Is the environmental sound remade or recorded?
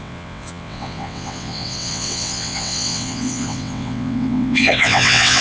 remade